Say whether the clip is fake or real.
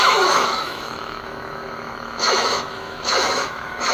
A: fake